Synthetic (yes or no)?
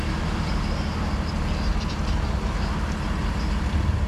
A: no